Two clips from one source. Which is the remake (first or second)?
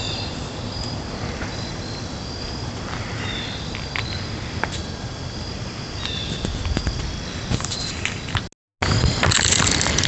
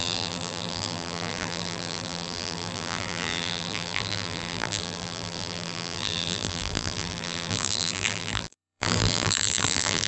second